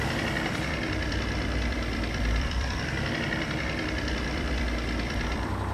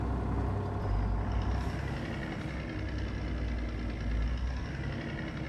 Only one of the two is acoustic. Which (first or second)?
second